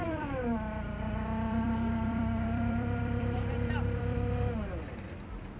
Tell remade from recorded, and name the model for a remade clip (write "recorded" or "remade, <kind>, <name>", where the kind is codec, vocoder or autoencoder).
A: remade, vocoder, BigVGAN v2